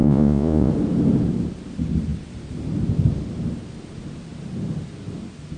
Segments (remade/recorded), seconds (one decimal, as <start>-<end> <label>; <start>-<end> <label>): 0.0-0.7 remade; 0.7-5.6 recorded